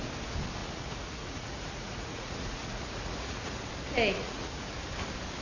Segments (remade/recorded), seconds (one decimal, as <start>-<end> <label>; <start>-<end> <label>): 0.0-0.6 recorded; 0.6-3.5 remade; 3.5-4.2 recorded; 4.2-4.8 remade; 4.8-5.4 recorded